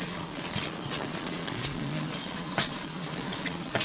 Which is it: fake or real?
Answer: fake